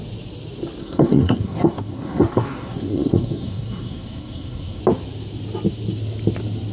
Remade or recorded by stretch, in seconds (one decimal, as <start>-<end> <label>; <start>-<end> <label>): 0.0-0.8 recorded; 0.8-4.8 remade; 4.8-6.7 recorded